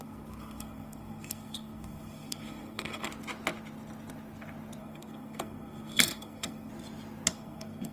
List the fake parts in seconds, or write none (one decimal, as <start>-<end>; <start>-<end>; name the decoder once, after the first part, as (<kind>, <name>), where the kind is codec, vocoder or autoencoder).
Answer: 0.0-3.1 (codec, SNAC); 4.8-6.7; 7.3-7.9

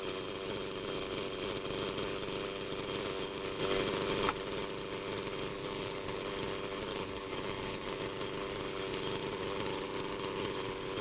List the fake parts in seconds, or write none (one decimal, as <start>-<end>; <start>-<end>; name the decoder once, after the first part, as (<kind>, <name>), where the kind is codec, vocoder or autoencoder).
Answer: 5.5-6.2 (codec, DAC); 6.9-8.0

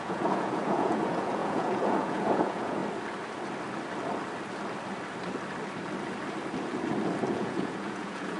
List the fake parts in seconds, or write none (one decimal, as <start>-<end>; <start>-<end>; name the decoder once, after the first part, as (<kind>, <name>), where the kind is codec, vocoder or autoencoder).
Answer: 0.0-2.8 (vocoder, Vocos); 7.3-8.4

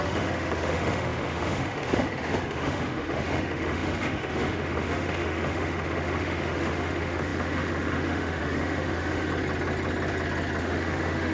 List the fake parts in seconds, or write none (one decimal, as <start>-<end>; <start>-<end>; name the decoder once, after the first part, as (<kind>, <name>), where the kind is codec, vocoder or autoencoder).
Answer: 0.0-9.3 (autoencoder, DAC-VAE); 10.6-11.3

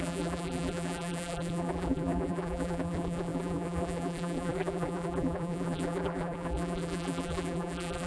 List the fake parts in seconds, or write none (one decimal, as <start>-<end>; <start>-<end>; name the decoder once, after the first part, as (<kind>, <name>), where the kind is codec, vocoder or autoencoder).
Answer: 0.0-8.1 (vocoder, BigVGAN v2)